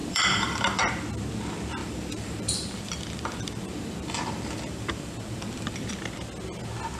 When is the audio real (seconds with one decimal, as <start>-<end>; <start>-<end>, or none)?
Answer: 0.9-1.8; 6.0-7.0